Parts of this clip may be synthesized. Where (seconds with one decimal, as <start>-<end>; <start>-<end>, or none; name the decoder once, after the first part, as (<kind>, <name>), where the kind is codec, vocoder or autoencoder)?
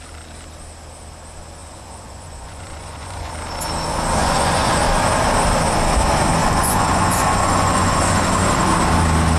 1.6-3.3 (vocoder, Vocos); 4.2-4.8; 6.4-8.2